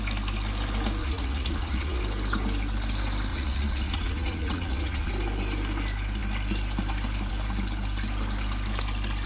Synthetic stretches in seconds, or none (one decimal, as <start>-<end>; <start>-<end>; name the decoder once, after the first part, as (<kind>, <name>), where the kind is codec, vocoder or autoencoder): 1.0-2.0 (vocoder, Vocos); 3.3-5.1